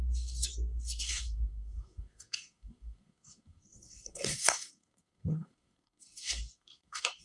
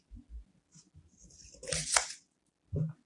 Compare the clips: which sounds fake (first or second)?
first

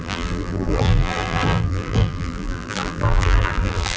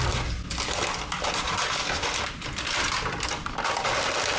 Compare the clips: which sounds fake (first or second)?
first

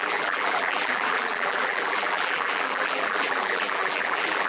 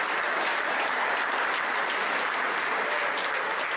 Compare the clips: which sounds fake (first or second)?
first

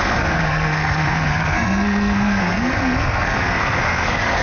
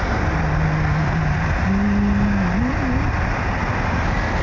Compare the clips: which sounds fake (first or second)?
first